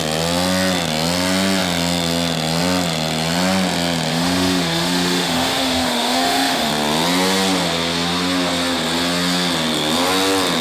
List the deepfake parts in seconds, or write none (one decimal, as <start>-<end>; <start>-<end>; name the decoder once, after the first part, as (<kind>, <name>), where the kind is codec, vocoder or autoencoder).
4.1-6.7 (autoencoder, DAC-VAE)